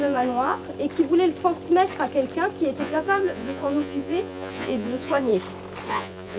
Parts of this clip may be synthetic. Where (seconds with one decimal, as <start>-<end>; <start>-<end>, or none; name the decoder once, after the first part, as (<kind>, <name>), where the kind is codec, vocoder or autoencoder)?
0.0-0.6 (vocoder, Vocos); 2.8-5.3; 5.9-6.4